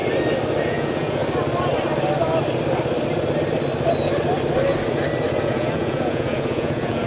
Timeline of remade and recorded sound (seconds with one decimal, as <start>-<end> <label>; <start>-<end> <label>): 0.0-0.6 recorded; 0.6-1.2 remade; 1.2-5.4 recorded; 5.4-7.1 remade